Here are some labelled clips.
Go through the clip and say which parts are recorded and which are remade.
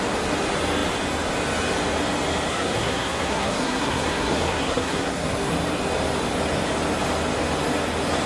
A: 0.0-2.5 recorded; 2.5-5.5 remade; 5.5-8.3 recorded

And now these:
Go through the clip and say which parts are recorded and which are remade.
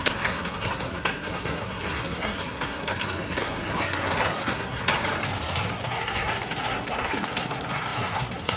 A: 0.0-4.9 remade; 4.9-5.4 recorded; 5.4-8.6 remade